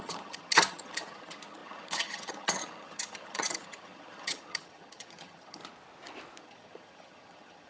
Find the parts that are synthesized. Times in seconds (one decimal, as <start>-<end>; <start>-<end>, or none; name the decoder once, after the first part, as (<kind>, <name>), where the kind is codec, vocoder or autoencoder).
0.0-5.6 (vocoder, HiFi-GAN); 6.4-7.7